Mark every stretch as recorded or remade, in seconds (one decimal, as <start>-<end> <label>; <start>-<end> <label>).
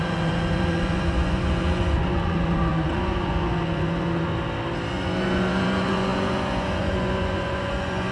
0.0-4.3 remade; 4.3-4.9 recorded; 4.9-8.1 remade